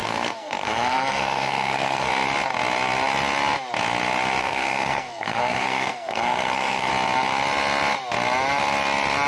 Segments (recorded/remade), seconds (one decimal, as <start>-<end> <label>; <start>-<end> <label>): 0.0-2.1 remade; 2.1-4.4 recorded; 4.4-6.9 remade; 6.9-9.3 recorded